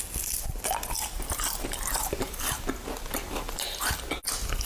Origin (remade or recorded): recorded